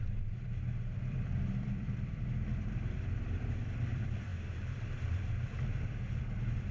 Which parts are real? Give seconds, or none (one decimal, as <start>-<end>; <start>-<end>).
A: 4.3-5.0